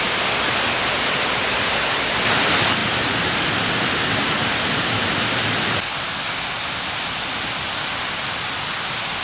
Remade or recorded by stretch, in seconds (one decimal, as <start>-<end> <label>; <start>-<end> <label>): 0.0-9.2 recorded